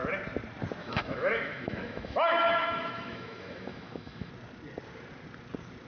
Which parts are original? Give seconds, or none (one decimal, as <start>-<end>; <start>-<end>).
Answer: 0.0-0.8; 4.3-5.9